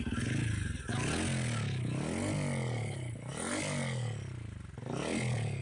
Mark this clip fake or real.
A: real